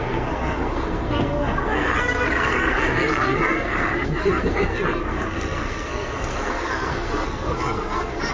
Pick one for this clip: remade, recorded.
remade